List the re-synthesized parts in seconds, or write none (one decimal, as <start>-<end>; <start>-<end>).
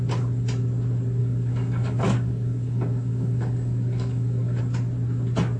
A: 1.2-4.6